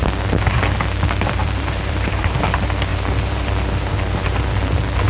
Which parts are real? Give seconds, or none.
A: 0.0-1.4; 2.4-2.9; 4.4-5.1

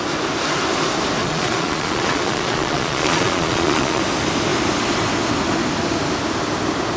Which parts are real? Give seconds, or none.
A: 0.0-1.2; 4.0-7.0

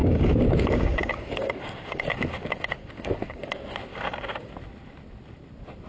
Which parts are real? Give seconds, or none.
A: 3.5-3.9; 4.5-5.9

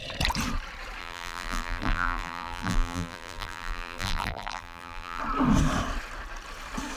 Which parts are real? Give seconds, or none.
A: 0.0-1.0; 5.2-7.0